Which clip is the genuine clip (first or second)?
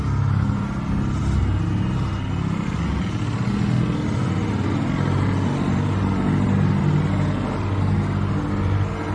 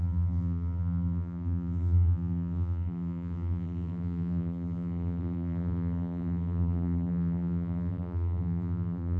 first